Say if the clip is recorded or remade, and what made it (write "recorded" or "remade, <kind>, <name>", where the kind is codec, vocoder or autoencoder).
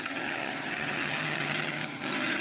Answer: remade, vocoder, HiFi-GAN